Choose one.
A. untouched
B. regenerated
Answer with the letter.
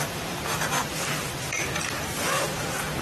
B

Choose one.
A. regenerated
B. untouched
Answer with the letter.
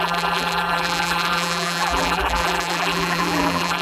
A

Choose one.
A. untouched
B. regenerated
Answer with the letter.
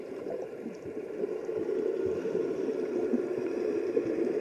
B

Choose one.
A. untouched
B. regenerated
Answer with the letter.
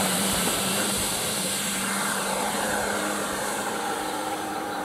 B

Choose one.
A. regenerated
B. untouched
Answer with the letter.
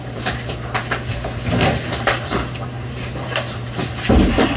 A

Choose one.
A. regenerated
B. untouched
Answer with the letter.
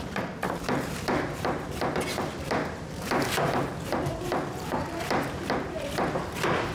A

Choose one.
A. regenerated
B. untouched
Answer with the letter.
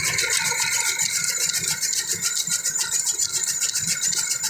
B